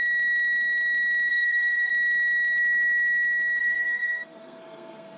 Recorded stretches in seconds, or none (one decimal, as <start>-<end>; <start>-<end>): 0.0-1.3; 1.9-3.6

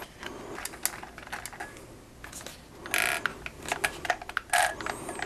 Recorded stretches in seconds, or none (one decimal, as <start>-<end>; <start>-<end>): 0.0-5.3

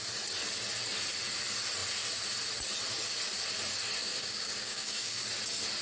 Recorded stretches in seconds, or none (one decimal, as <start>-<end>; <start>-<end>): 0.0-4.0; 5.3-5.8

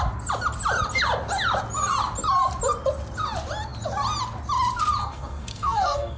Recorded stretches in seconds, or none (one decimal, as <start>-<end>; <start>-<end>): 0.0-5.0

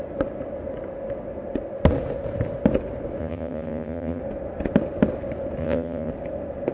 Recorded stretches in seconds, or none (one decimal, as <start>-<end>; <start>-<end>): 0.0-3.2; 4.2-5.6; 6.1-6.7